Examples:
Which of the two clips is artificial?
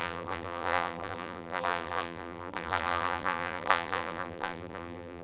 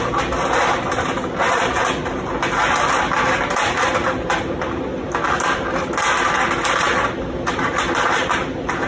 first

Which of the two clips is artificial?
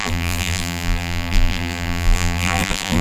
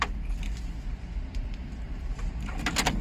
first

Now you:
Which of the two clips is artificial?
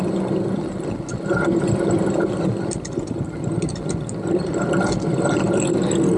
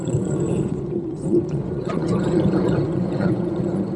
second